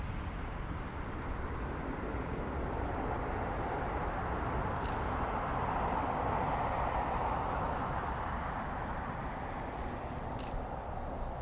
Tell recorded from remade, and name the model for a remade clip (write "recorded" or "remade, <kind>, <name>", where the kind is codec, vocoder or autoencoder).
recorded